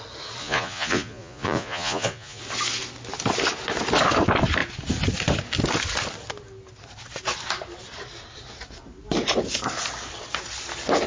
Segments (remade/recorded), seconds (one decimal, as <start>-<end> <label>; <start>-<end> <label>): 0.0-0.4 recorded; 0.4-2.4 remade; 2.4-11.1 recorded